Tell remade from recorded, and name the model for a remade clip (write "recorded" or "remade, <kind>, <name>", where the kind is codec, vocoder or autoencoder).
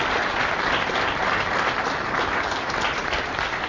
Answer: recorded